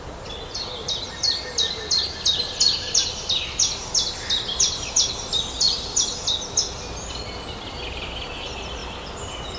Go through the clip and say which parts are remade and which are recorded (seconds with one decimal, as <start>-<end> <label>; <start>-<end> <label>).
0.0-9.6 recorded

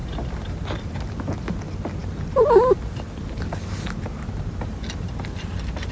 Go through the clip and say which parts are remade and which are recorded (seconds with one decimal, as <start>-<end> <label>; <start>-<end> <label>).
0.0-5.9 recorded

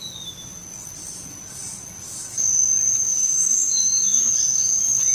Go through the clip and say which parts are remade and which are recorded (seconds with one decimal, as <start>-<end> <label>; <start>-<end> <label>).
0.0-3.2 recorded; 3.2-4.3 remade; 4.3-5.1 recorded

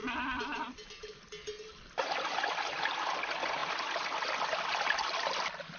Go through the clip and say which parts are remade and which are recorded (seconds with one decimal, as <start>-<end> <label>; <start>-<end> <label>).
0.0-5.8 recorded

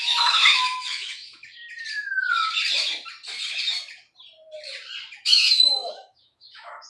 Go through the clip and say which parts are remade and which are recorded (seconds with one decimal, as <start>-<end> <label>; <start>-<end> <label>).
0.0-1.6 remade; 1.6-5.2 recorded; 5.2-6.9 remade

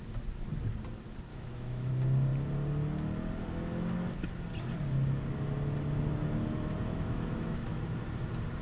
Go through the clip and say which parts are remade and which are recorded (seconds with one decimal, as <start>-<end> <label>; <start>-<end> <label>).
0.0-1.3 recorded; 1.3-1.9 remade; 1.9-6.9 recorded; 6.9-7.8 remade; 7.8-8.6 recorded

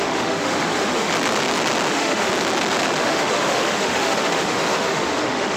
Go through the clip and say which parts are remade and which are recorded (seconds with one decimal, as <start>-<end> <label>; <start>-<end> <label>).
0.0-1.1 remade; 1.1-1.9 recorded; 1.9-2.3 remade; 2.3-3.0 recorded; 3.0-5.6 remade

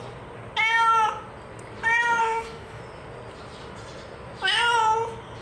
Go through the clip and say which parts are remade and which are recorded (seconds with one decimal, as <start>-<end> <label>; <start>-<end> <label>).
0.0-2.2 recorded; 2.2-2.8 remade; 2.8-5.4 recorded